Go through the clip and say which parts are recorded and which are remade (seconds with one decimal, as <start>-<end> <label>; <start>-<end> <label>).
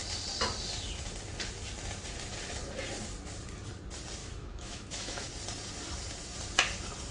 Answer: 0.0-4.2 recorded; 4.2-5.3 remade; 5.3-7.1 recorded